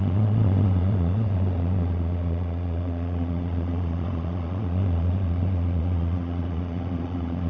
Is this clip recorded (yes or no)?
no